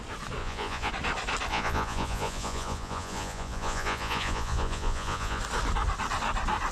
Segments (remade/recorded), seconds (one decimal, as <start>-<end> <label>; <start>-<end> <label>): 0.0-0.4 recorded; 0.4-0.9 remade; 0.9-1.5 recorded; 1.5-5.4 remade; 5.4-6.7 recorded